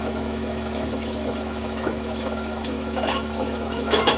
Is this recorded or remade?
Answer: remade